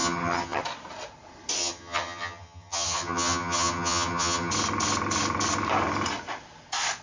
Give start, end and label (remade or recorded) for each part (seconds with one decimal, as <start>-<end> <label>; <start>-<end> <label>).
0.0-0.6 remade; 0.6-1.6 recorded; 1.6-4.5 remade; 4.5-7.0 recorded